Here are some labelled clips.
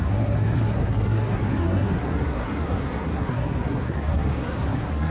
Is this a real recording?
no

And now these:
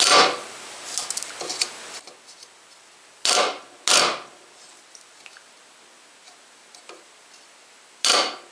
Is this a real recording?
yes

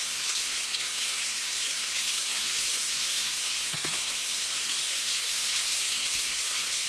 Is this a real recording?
no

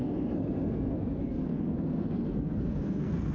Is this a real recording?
no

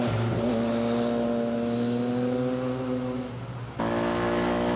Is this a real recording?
yes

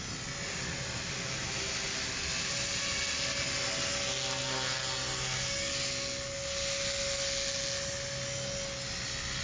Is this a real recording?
yes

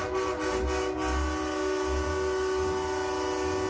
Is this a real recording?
yes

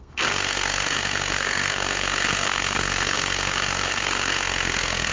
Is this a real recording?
no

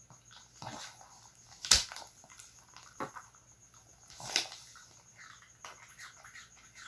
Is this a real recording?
yes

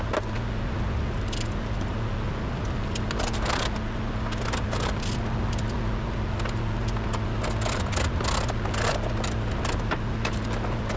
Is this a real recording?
yes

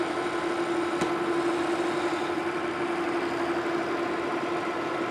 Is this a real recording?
yes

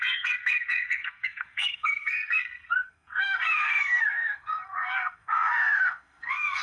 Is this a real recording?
no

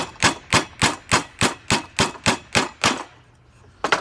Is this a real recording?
yes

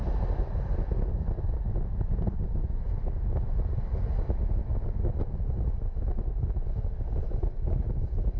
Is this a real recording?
yes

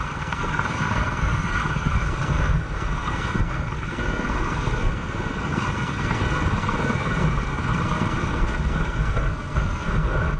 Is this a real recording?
no